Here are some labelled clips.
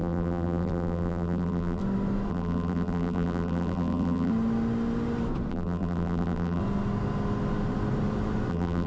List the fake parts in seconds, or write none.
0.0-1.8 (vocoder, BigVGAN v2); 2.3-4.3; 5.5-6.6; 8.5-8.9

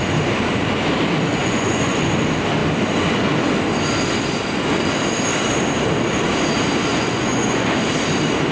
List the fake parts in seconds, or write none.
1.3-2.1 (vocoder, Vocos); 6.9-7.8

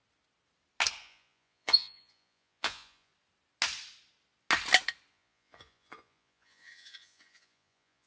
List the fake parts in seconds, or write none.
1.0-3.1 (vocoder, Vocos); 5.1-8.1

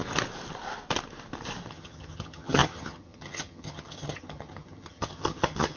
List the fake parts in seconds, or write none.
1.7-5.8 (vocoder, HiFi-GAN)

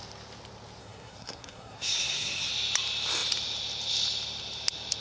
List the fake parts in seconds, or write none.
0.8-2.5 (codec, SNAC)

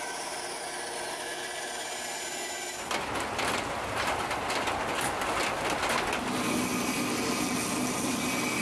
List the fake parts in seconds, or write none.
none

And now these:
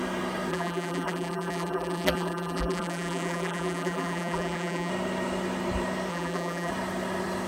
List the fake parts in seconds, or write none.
0.5-4.9 (vocoder, BigVGAN v2); 6.1-6.7

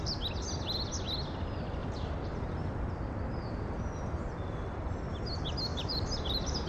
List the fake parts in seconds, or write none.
1.8-4.2 (vocoder, BigVGAN v2); 5.7-6.7